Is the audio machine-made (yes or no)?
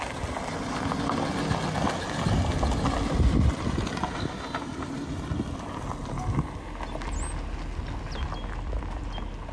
no